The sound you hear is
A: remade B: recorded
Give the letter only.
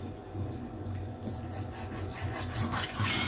A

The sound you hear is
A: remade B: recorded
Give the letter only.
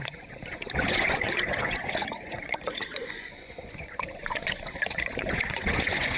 A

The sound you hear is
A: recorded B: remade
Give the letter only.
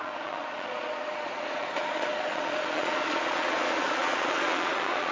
B